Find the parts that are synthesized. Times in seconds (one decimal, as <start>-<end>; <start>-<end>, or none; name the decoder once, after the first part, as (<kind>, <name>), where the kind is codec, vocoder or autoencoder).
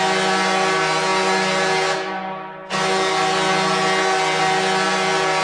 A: none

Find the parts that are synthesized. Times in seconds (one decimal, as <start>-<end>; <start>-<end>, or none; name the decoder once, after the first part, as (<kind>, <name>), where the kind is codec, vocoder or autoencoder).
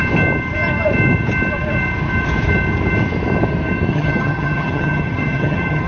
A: 3.9-5.9 (vocoder, HiFi-GAN)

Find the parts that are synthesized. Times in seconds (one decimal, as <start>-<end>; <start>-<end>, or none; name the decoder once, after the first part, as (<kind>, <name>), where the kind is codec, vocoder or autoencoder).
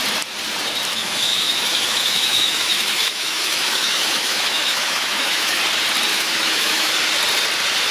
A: 0.9-5.6 (autoencoder, DAC-VAE); 6.1-6.9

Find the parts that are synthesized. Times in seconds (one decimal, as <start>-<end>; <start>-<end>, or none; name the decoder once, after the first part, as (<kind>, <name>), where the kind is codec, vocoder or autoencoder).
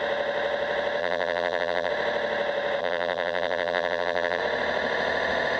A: 1.0-1.9 (vocoder, BigVGAN v2); 2.8-4.4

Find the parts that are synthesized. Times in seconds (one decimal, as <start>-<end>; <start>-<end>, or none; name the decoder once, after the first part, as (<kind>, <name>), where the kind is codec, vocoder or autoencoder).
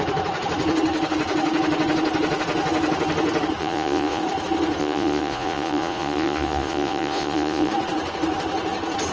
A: 3.6-4.2 (vocoder, Vocos); 4.8-7.7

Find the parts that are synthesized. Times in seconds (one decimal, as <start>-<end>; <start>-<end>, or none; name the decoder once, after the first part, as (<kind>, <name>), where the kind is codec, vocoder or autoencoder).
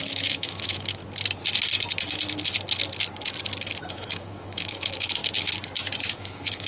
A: 0.0-1.0 (autoencoder, DAC-VAE); 3.9-5.2; 6.1-6.7